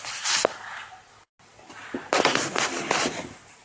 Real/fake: real